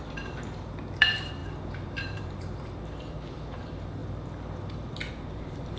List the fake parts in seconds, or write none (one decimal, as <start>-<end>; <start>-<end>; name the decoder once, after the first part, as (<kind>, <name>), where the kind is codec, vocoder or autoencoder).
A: 0.0-4.0 (vocoder, BigVGAN v2); 5.1-5.8